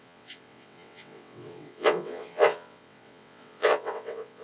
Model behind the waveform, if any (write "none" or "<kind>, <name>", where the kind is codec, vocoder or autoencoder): vocoder, WaveNeXt